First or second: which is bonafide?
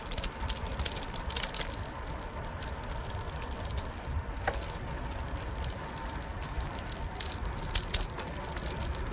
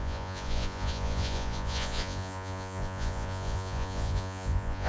first